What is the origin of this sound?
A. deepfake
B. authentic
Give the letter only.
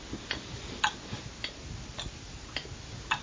B